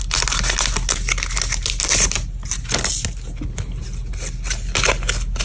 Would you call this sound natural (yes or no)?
yes